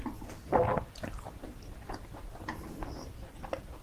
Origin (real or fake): real